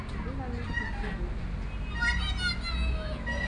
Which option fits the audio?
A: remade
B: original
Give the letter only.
B